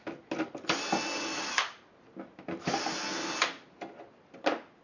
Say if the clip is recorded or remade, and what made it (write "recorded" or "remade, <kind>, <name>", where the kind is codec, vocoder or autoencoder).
recorded